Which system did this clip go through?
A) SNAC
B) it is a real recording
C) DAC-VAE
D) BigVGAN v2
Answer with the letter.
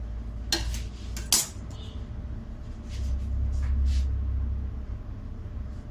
B